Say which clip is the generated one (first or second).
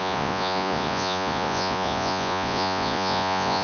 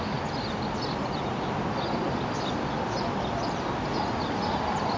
first